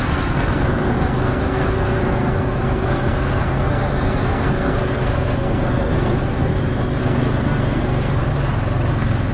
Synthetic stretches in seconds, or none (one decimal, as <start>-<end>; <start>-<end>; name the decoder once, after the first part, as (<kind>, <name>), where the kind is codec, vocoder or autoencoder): 0.0-6.5 (codec, SNAC); 7.0-8.2; 8.9-9.3